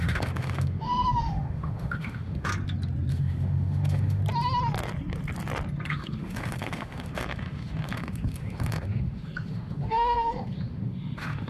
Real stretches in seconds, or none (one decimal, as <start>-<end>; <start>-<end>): 2.5-3.1; 4.2-5.9